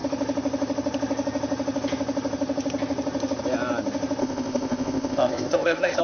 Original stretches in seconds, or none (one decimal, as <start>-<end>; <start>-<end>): 0.0-4.2